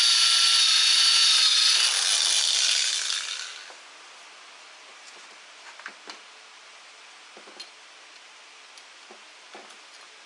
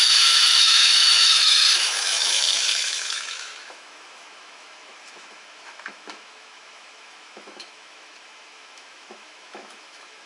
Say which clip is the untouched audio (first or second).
first